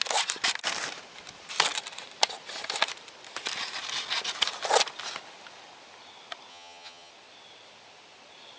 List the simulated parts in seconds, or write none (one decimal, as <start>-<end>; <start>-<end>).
6.5-7.1